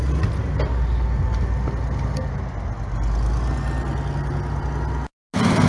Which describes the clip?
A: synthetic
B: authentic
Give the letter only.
B